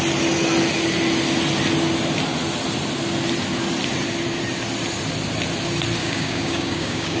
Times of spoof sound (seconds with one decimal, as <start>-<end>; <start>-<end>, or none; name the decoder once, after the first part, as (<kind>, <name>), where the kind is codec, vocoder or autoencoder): 6.0-7.2 (codec, DAC)